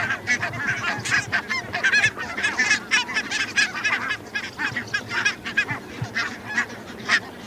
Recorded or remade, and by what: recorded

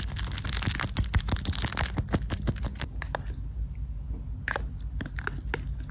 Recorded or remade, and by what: recorded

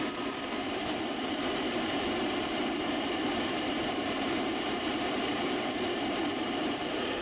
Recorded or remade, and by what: remade, vocoder, BigVGAN v2